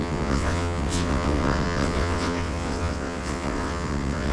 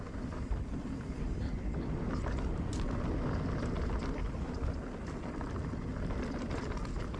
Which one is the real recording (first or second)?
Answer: second